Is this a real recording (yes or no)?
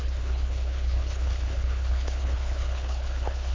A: no